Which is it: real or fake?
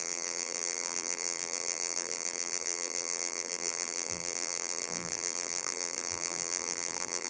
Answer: fake